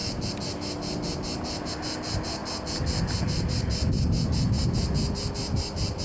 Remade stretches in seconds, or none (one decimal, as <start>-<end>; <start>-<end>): none